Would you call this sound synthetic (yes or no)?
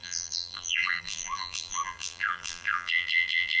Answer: yes